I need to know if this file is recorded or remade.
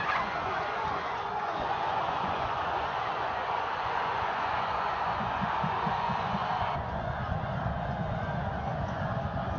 remade